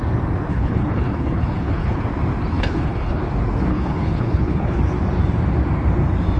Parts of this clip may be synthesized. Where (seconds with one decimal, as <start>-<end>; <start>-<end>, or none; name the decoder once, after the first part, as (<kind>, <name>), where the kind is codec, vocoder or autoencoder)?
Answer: 0.5-2.0 (codec, HILCodec); 2.5-3.2; 3.7-4.8